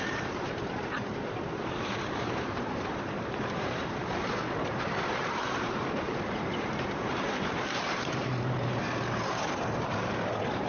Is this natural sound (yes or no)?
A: no